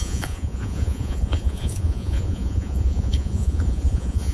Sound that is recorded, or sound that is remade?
remade